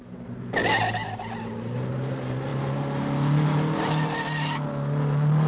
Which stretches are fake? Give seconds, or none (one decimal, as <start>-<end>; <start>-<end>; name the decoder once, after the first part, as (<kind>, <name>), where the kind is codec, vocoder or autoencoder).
none